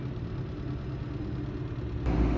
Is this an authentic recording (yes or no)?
yes